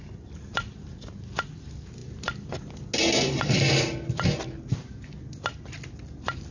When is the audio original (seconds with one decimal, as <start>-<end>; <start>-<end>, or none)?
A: 0.0-6.5

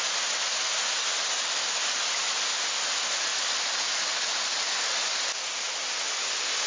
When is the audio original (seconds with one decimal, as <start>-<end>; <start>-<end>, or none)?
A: 0.0-6.7

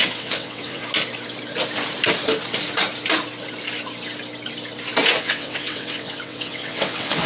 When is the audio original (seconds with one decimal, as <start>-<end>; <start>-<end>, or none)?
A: 0.8-5.2

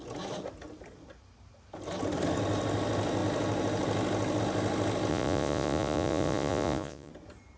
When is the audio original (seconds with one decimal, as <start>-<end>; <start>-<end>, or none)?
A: 0.0-5.1; 7.1-7.6